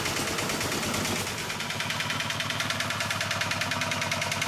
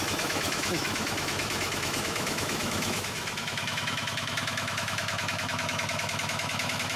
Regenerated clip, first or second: second